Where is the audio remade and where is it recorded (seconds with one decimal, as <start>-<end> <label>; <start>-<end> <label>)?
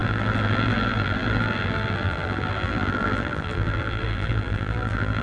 0.0-5.2 remade